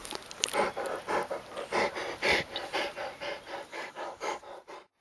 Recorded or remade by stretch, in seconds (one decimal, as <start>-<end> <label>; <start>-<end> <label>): 0.0-3.7 recorded; 3.7-4.4 remade; 4.4-5.0 recorded